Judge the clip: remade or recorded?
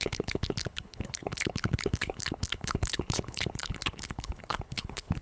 remade